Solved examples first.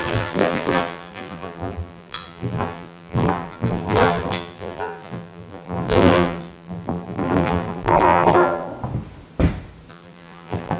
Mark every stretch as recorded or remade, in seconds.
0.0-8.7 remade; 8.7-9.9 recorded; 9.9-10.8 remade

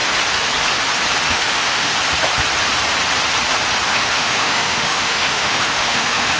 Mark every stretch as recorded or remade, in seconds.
0.0-1.3 recorded; 1.3-1.9 remade; 1.9-3.9 recorded; 3.9-6.4 remade

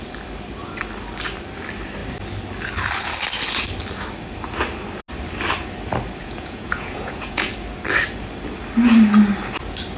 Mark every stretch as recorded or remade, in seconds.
0.0-6.2 recorded; 6.2-7.5 remade; 7.5-10.0 recorded

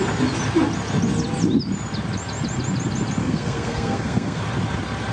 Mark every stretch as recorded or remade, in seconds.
0.0-3.2 recorded; 3.2-4.4 remade; 4.4-5.1 recorded

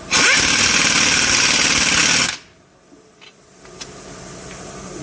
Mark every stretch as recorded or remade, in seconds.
0.0-5.0 recorded

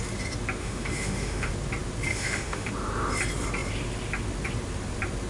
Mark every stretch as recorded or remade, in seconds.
0.0-0.6 recorded; 0.6-1.5 remade; 1.5-2.1 recorded; 2.1-2.7 remade; 2.7-5.3 recorded

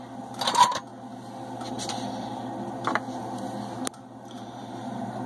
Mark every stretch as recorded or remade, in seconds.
0.0-0.9 remade; 0.9-1.7 recorded; 1.7-2.4 remade; 2.4-3.9 recorded; 3.9-5.3 remade

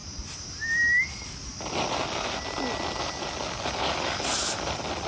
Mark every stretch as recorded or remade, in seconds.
0.0-5.1 recorded